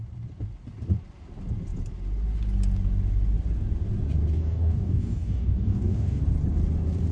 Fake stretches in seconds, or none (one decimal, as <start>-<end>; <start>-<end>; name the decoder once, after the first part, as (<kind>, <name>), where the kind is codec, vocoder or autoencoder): 4.3-6.2 (codec, DAC)